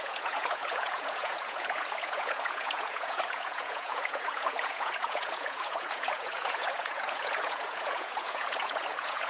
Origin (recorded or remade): remade